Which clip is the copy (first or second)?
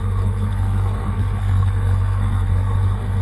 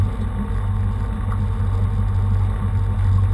first